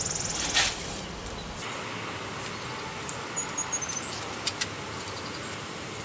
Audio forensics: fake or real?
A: real